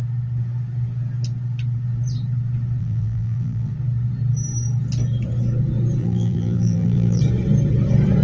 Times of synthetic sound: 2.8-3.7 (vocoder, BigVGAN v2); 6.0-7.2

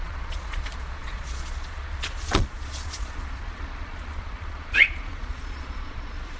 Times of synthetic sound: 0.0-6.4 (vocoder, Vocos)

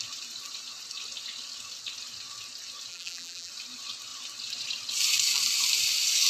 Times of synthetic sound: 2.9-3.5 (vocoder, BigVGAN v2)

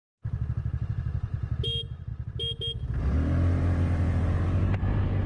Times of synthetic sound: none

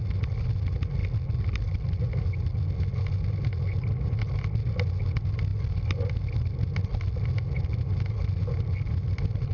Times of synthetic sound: none

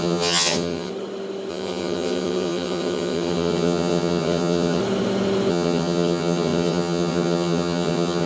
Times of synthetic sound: 0.0-0.9 (vocoder, HiFi-GAN); 1.5-4.8; 5.5-8.3

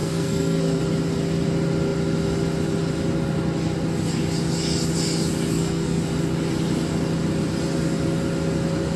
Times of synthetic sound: 0.0-0.8 (codec, SNAC); 5.5-6.0

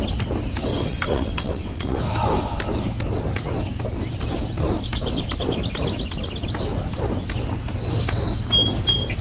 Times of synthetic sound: 0.7-2.0 (vocoder, WaveNeXt)